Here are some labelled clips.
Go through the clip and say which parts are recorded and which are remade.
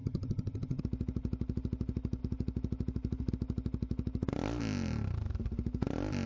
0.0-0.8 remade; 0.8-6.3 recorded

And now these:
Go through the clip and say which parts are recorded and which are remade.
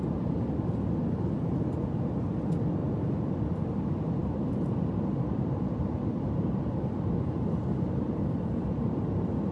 0.0-2.8 recorded; 2.8-3.6 remade; 3.6-4.2 recorded; 4.2-8.8 remade; 8.8-9.5 recorded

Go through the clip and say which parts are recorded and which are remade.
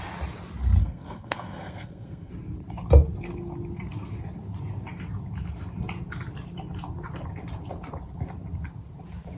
0.0-0.8 recorded; 0.8-2.3 remade; 2.3-9.4 recorded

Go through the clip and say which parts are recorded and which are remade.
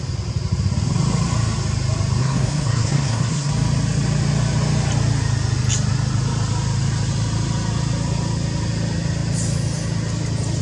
0.0-2.2 recorded; 2.2-3.5 remade; 3.5-10.6 recorded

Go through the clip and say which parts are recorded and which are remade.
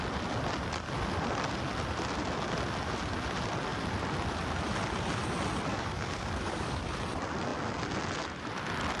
0.0-5.7 recorded; 5.7-6.8 remade; 6.8-9.0 recorded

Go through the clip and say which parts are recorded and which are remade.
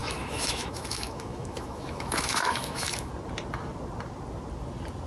0.0-3.1 remade; 3.1-5.1 recorded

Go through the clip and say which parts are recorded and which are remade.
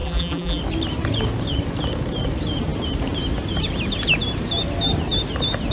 0.0-0.6 remade; 0.6-5.7 recorded